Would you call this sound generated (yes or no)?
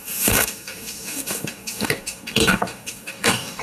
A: yes